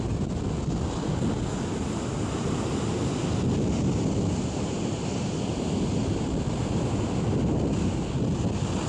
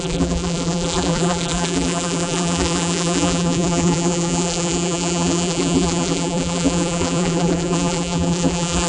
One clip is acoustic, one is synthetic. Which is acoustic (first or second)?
first